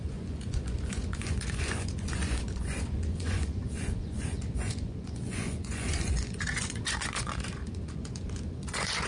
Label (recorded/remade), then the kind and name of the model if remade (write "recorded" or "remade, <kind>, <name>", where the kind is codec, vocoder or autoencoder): remade, vocoder, Vocos